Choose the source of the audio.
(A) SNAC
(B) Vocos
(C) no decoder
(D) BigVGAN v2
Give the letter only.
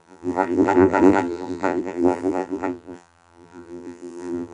D